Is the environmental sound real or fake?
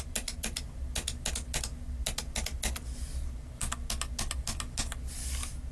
real